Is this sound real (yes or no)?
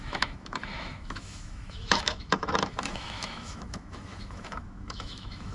no